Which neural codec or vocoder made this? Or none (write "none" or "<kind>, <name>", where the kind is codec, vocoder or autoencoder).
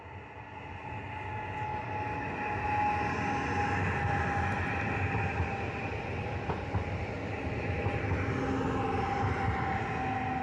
none